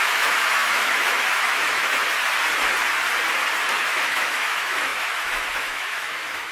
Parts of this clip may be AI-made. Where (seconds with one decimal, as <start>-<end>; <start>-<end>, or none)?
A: 0.0-2.0; 3.8-6.5